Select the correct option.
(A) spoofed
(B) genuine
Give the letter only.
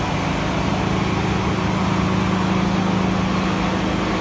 B